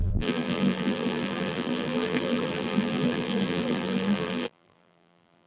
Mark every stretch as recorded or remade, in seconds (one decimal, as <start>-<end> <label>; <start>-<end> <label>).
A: 0.0-5.5 remade